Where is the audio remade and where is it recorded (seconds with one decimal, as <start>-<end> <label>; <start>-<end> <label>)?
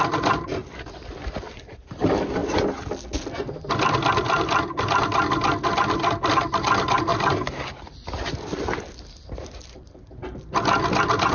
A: 0.0-2.4 remade; 2.4-3.7 recorded; 3.7-7.1 remade; 7.1-9.2 recorded; 9.2-11.3 remade